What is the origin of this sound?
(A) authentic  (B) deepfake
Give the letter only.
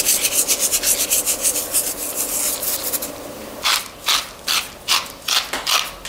A